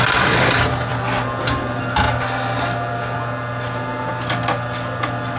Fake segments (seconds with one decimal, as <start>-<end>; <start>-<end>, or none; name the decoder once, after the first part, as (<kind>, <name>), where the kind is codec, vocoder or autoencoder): none